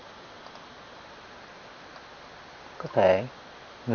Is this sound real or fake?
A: real